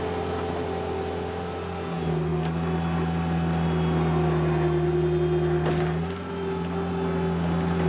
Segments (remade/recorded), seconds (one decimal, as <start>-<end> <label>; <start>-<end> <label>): 0.0-7.9 recorded